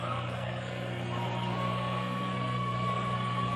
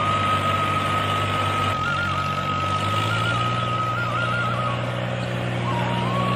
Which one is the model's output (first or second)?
first